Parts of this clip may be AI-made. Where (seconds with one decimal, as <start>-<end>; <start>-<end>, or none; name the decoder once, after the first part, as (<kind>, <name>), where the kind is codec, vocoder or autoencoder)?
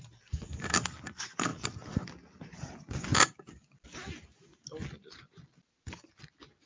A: none